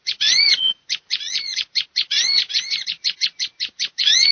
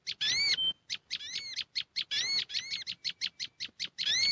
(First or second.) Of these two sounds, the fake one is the first